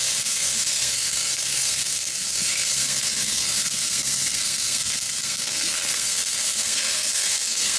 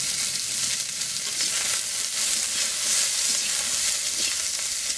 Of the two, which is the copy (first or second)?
first